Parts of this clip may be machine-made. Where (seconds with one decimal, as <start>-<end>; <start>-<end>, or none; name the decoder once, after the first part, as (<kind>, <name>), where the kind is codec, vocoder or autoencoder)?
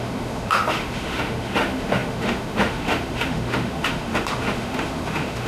0.0-5.5 (autoencoder, DAC-VAE)